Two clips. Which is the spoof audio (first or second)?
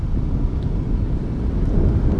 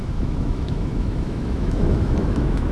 second